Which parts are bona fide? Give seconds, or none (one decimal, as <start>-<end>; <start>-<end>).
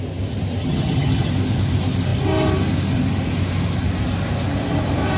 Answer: 0.0-0.6; 1.3-5.2